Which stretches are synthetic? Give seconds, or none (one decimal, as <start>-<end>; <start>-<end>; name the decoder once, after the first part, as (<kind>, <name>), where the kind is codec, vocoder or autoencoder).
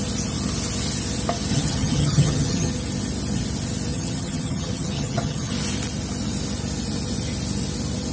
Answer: 1.5-2.7 (vocoder, HiFi-GAN); 3.9-5.5